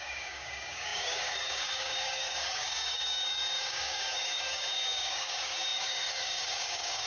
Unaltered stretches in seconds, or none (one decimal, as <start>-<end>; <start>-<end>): none